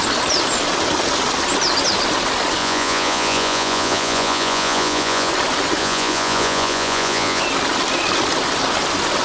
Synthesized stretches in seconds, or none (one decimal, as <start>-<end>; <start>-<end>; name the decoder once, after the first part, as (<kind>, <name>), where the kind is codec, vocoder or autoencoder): 2.6-5.3 (vocoder, Vocos); 5.8-7.4